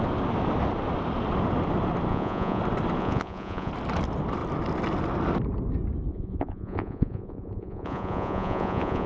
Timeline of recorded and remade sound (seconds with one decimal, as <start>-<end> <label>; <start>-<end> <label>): 0.0-2.1 recorded; 2.1-2.6 remade; 2.6-3.0 recorded; 3.0-3.7 remade; 3.7-6.1 recorded; 6.1-9.1 remade